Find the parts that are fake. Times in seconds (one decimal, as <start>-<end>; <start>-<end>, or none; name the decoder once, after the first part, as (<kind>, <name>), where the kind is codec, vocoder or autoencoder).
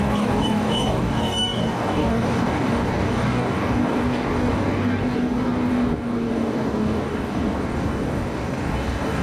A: 0.0-9.2 (codec, DAC)